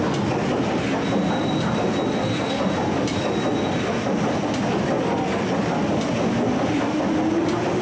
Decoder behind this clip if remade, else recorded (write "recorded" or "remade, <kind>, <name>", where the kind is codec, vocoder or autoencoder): recorded